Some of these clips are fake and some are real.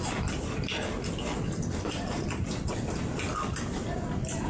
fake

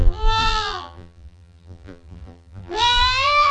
fake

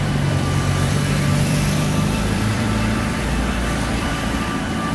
fake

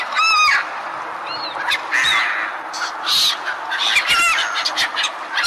real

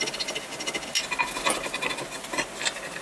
real